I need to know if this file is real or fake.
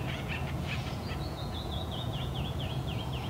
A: fake